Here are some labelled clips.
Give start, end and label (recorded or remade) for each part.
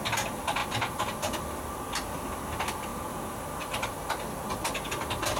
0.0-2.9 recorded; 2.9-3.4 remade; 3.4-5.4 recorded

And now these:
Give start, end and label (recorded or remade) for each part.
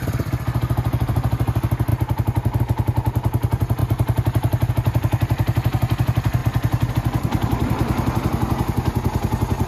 0.0-9.7 recorded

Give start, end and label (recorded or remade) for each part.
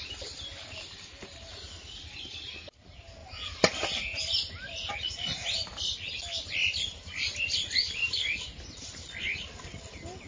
0.0-1.5 recorded; 1.5-2.0 remade; 2.0-10.3 recorded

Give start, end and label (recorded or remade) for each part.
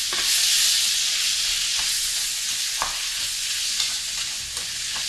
0.0-1.7 recorded; 1.7-5.1 remade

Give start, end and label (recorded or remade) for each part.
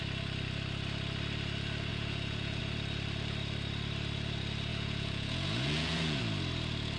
0.0-1.9 recorded; 1.9-2.6 remade; 2.6-4.7 recorded; 4.7-6.2 remade; 6.2-7.0 recorded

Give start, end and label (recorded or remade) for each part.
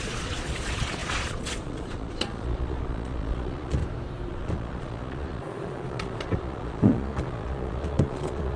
0.0-3.8 remade; 3.8-4.3 recorded; 4.3-8.6 remade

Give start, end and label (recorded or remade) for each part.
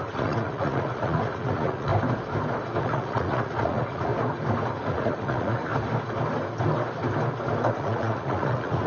0.0-1.9 remade; 1.9-2.8 recorded; 2.8-4.1 remade; 4.1-4.8 recorded; 4.8-5.7 remade; 5.7-7.7 recorded; 7.7-8.9 remade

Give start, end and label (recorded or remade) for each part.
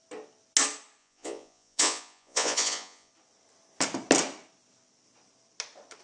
0.0-1.0 recorded; 1.0-3.1 remade; 3.1-6.0 recorded